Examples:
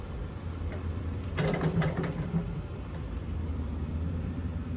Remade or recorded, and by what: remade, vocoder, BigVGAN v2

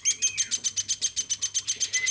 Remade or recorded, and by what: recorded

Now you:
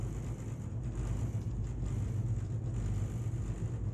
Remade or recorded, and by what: recorded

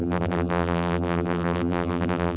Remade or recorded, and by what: remade, vocoder, BigVGAN v2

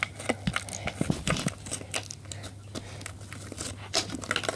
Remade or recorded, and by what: recorded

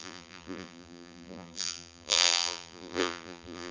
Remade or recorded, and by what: remade, vocoder, BigVGAN v2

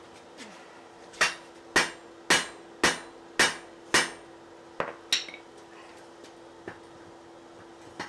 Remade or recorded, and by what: recorded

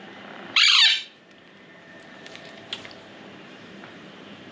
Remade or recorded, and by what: remade, vocoder, BigVGAN v2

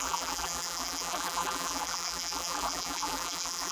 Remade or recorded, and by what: remade, vocoder, BigVGAN v2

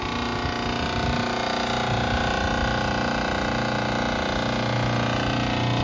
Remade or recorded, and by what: recorded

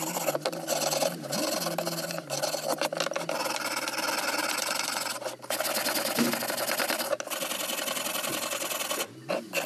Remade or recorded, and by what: recorded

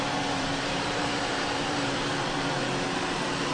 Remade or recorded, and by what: remade, vocoder, BigVGAN v2